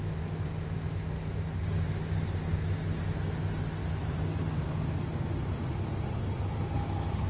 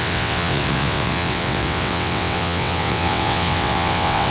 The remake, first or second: second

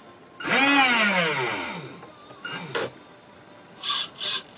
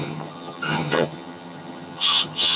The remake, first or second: second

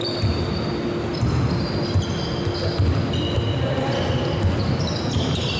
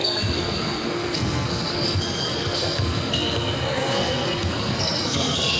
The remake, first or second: second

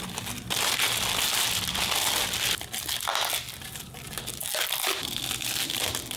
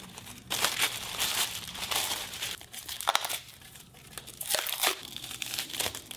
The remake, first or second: second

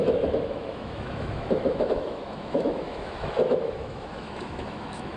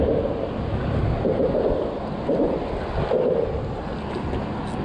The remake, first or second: first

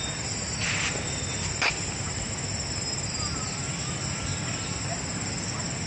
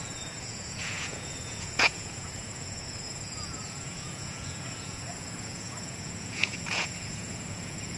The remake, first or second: second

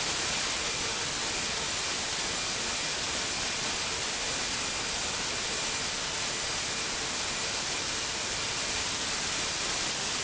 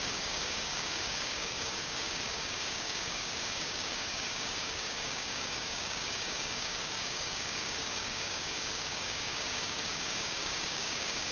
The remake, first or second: second